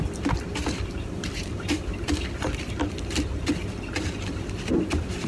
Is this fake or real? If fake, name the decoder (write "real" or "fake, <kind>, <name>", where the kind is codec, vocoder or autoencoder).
fake, vocoder, BigVGAN v2